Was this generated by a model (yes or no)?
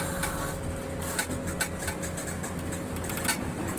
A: no